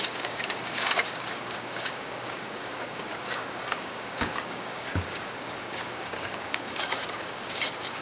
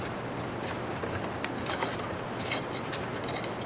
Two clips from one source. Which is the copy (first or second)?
first